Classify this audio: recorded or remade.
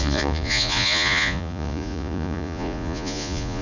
remade